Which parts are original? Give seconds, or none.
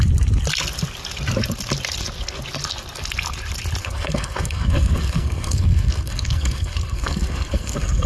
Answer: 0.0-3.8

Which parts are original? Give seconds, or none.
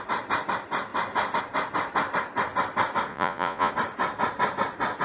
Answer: 0.0-3.1; 3.7-5.0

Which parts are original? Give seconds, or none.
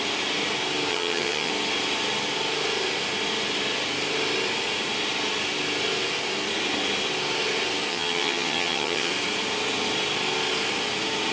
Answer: 0.0-0.9; 1.5-7.9; 9.1-11.3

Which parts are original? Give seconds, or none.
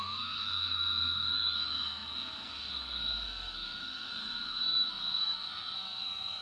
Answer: none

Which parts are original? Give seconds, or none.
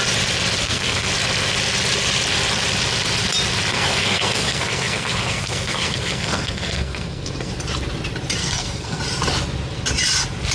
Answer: 0.0-0.6; 1.1-3.7; 7.5-8.4; 9.0-10.5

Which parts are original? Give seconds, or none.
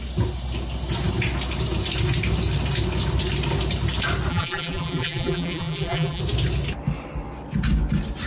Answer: 0.0-4.3; 6.2-8.3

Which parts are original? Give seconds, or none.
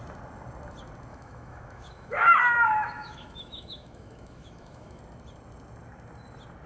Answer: 0.0-1.1; 5.0-6.7